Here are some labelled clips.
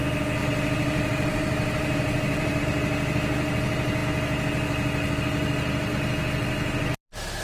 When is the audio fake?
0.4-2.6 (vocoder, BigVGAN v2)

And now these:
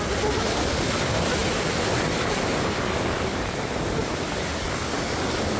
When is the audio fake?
none

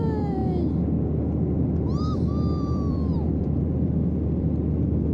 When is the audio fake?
0.0-0.4 (vocoder, BigVGAN v2); 1.6-5.1

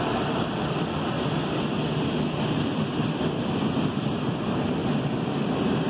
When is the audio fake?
0.0-4.8 (vocoder, BigVGAN v2)

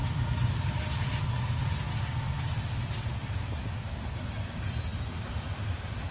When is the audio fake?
none

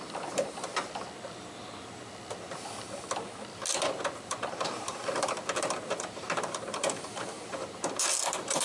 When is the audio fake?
0.0-0.7 (vocoder, BigVGAN v2); 3.7-8.6

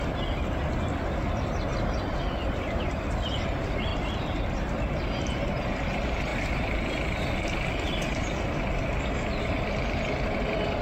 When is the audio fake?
3.9-4.7 (vocoder, BigVGAN v2)

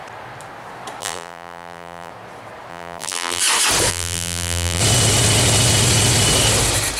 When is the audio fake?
1.0-2.1 (vocoder, BigVGAN v2); 2.7-3.4; 3.9-4.8